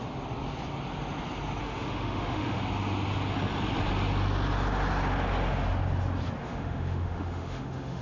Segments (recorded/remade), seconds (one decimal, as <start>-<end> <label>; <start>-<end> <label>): 0.0-1.6 recorded; 1.6-2.6 remade; 2.6-6.4 recorded; 6.4-8.0 remade